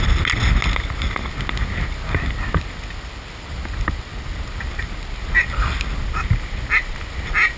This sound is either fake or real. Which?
real